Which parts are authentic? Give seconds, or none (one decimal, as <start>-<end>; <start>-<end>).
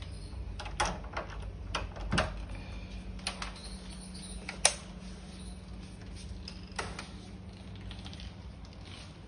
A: 0.0-9.3